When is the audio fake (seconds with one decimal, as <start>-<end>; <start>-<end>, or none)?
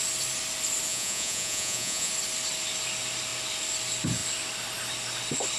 0.9-2.1